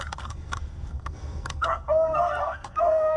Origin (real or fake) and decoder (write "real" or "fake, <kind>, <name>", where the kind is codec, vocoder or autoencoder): fake, codec, SNAC